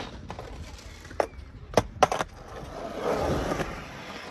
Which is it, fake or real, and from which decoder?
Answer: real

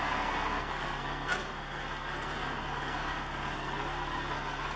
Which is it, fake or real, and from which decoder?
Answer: fake, codec, SNAC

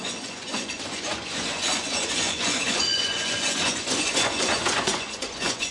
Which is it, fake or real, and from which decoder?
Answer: fake, vocoder, Vocos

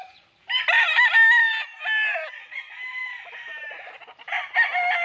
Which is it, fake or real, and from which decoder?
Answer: real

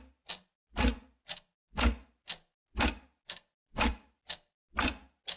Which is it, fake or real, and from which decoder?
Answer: real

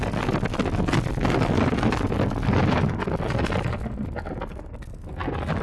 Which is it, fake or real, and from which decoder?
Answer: real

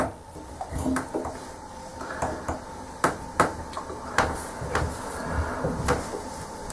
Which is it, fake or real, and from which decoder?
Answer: real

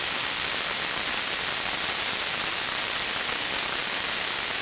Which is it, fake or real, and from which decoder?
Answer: real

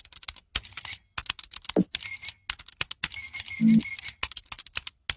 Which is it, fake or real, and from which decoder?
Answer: real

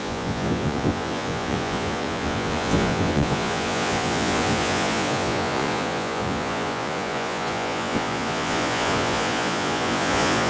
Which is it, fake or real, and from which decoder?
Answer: fake, vocoder, Vocos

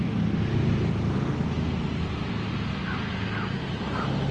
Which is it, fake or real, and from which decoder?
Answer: real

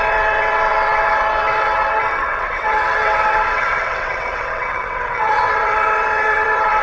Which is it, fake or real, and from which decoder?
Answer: fake, vocoder, WaveNeXt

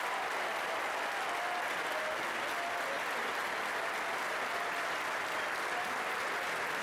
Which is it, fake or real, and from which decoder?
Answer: real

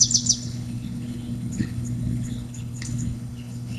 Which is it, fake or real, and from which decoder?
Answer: fake, codec, HILCodec